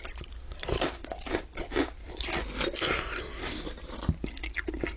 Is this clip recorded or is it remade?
recorded